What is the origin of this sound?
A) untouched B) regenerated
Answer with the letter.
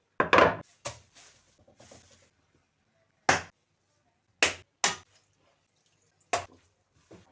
A